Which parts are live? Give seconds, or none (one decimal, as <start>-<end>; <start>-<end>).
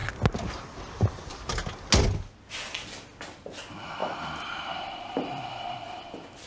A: 0.0-4.0